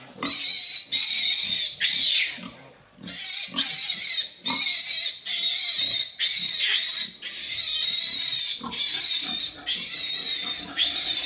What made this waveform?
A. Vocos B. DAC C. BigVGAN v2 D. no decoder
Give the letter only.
D